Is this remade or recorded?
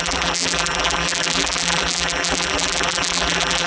remade